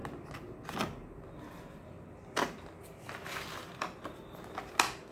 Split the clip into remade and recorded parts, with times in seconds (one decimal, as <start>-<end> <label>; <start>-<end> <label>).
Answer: 0.0-5.1 recorded